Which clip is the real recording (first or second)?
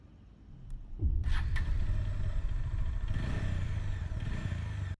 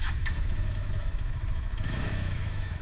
first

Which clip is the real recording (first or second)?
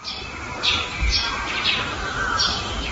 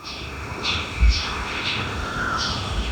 first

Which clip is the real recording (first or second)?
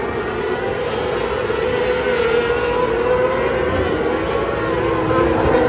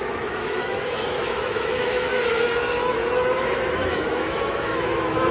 first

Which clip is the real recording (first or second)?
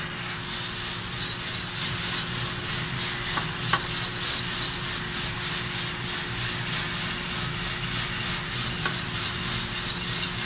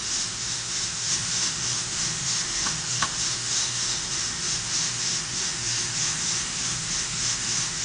first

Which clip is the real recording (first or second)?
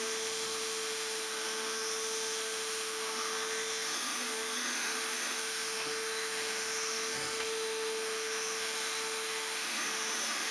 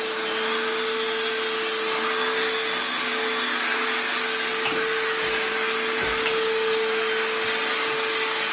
second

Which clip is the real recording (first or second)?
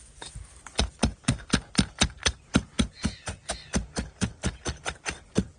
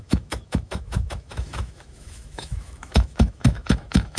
first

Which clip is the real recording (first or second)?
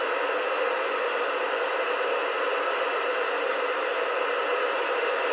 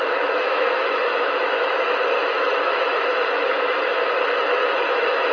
first